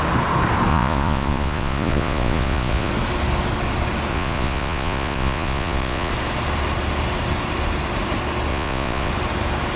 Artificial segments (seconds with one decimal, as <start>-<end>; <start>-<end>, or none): 0.7-2.9; 4.1-6.1; 8.5-9.1

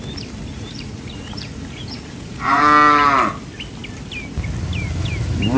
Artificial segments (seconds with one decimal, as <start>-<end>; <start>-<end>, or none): 0.5-2.6